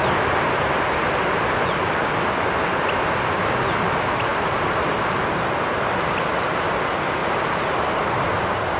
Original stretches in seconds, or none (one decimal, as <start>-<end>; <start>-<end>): 0.0-4.3; 5.1-7.2; 8.4-8.8

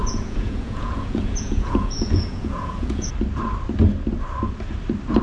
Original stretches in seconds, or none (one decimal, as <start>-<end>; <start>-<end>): 3.1-5.2

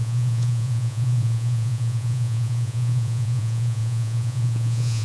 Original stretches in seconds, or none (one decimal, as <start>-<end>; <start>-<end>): none

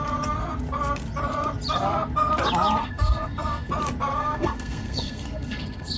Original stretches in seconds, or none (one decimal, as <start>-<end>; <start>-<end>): 0.0-2.8; 3.7-4.2

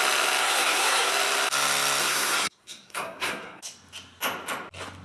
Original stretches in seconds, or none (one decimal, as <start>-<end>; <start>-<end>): 0.0-0.4; 1.1-2.0; 3.6-5.0